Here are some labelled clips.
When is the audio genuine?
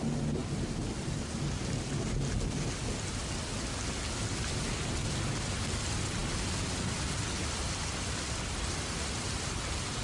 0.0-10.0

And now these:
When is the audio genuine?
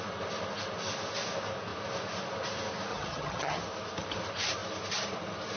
0.0-2.9; 3.6-5.6